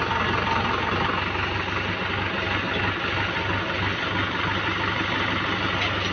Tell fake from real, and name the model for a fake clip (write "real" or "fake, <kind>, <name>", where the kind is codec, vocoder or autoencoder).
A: real